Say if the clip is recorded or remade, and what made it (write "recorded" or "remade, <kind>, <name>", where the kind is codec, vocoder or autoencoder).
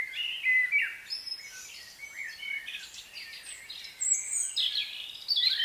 recorded